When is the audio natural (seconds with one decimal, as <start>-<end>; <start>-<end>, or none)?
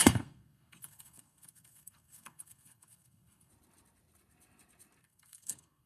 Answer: 3.5-5.0